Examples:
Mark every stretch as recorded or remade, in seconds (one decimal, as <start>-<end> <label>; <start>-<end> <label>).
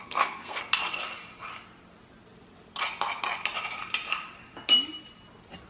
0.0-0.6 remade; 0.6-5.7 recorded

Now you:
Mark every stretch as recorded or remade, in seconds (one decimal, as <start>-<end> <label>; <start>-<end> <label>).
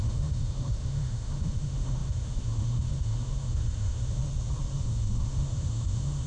0.0-4.2 remade; 4.2-4.8 recorded; 4.8-6.3 remade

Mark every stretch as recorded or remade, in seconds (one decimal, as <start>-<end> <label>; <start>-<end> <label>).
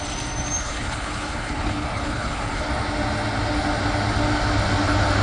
0.0-0.6 recorded; 0.6-2.7 remade; 2.7-5.2 recorded